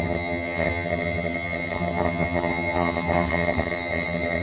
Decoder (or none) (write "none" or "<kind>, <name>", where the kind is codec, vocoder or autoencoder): vocoder, HiFi-GAN